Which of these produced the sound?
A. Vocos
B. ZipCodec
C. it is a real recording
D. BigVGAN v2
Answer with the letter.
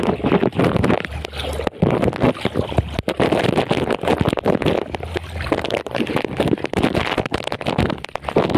C